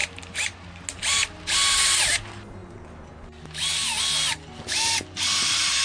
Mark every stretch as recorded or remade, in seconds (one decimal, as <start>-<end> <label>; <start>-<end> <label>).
0.0-5.8 recorded

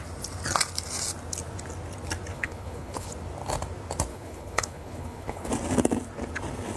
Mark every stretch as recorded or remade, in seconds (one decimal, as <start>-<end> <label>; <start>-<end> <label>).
0.0-2.3 recorded; 2.3-3.1 remade; 3.1-4.1 recorded; 4.1-5.5 remade; 5.5-6.8 recorded

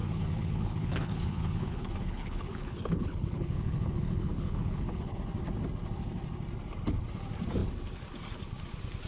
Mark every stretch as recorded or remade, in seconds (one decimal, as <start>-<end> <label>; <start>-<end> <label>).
0.0-5.2 remade; 5.2-9.1 recorded